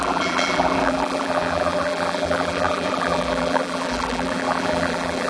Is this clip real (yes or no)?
no